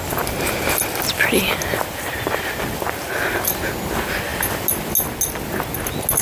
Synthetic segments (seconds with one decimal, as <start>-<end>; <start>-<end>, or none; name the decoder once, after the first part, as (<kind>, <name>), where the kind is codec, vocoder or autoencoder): none